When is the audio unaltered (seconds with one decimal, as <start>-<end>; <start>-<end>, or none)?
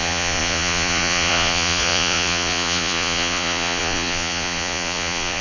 none